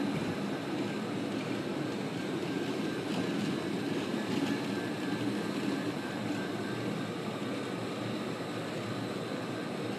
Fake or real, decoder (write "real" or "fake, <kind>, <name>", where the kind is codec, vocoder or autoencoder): real